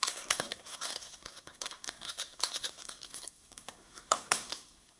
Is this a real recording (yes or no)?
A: no